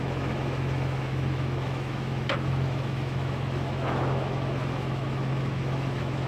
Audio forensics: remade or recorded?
remade